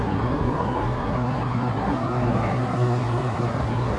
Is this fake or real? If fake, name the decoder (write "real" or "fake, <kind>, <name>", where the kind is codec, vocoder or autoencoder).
fake, codec, SNAC